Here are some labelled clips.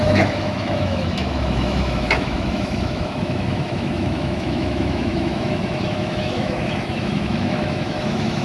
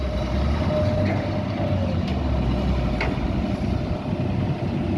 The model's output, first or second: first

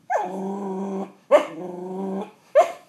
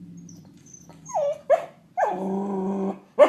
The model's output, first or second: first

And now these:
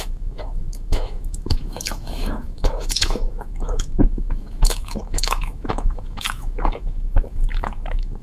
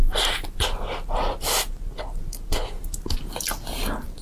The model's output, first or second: first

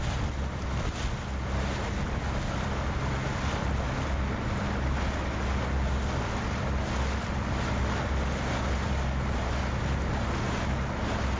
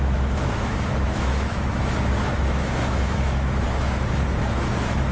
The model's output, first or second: second